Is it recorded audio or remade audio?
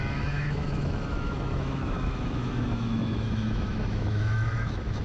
remade